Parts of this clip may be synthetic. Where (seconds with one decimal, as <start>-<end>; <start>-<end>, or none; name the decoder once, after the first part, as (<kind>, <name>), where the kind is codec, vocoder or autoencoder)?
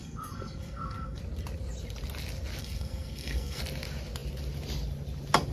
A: 0.0-1.2 (codec, SNAC); 2.6-3.6